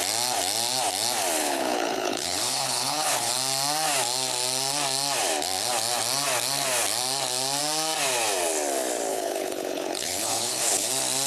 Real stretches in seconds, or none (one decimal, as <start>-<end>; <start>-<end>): 0.0-1.4; 3.3-9.1; 10.9-11.3